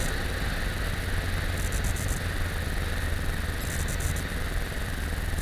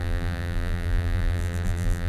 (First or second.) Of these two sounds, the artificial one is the second